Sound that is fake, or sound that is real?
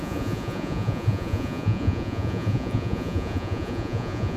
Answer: fake